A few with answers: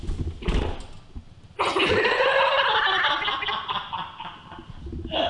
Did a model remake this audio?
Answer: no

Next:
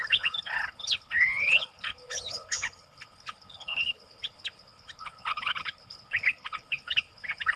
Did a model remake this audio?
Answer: yes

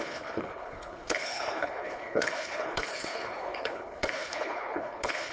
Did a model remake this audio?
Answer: yes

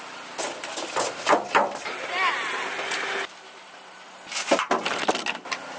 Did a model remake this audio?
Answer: no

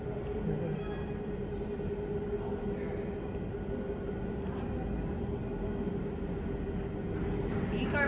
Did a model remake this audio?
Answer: no